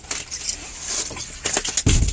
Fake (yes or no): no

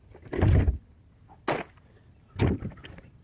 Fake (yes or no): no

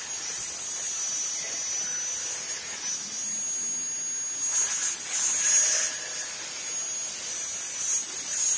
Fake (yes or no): no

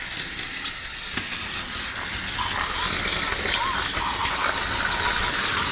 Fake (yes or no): no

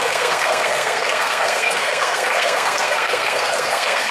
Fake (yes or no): yes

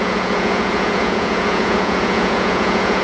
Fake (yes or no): yes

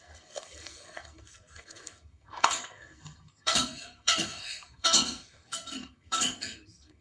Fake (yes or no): yes